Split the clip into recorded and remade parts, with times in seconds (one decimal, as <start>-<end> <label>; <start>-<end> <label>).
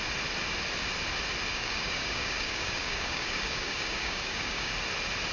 0.0-1.5 recorded; 1.5-4.7 remade; 4.7-5.3 recorded